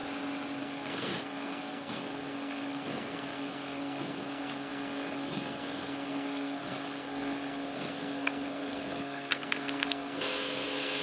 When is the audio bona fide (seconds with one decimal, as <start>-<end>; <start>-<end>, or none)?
0.0-0.6